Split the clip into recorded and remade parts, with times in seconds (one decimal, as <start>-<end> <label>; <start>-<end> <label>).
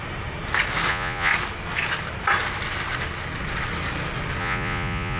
0.0-0.9 recorded; 0.9-1.3 remade; 1.3-4.4 recorded; 4.4-5.2 remade